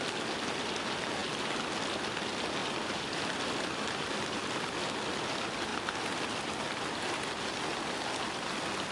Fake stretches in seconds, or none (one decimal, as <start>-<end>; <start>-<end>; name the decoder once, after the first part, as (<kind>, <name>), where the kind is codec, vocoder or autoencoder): 2.6-4.4 (vocoder, BigVGAN v2)